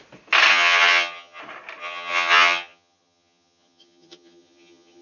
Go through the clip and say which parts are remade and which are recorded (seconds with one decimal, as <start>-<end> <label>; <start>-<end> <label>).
0.0-0.5 recorded; 0.5-1.4 remade; 1.4-1.8 recorded; 1.8-5.0 remade